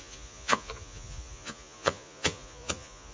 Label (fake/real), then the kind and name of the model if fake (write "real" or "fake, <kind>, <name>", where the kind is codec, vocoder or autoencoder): fake, vocoder, Vocos